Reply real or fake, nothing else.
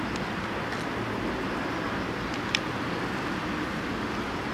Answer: real